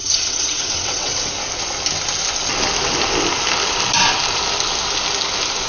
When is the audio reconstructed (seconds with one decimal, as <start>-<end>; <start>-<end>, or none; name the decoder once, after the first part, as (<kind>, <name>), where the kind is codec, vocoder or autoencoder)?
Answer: 0.0-1.3 (vocoder, WaveNeXt)